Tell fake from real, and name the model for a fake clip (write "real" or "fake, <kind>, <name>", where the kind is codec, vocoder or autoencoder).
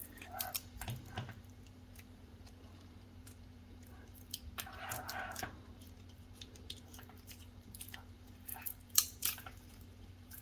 fake, vocoder, BigVGAN v2